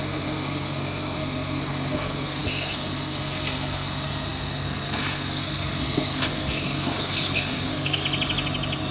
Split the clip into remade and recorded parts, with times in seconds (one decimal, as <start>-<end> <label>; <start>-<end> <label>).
0.0-8.0 remade; 8.0-8.9 recorded